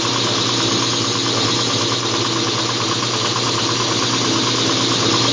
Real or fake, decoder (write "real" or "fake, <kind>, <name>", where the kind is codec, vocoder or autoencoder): real